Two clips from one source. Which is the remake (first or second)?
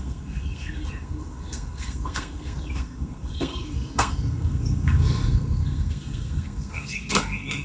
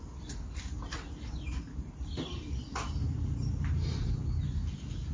first